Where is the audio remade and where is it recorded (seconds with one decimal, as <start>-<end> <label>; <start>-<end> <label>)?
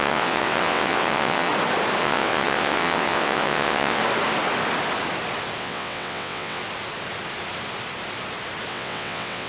0.0-1.5 remade; 1.5-2.0 recorded; 2.0-4.0 remade; 4.0-5.6 recorded; 5.6-6.6 remade; 6.6-8.7 recorded; 8.7-9.5 remade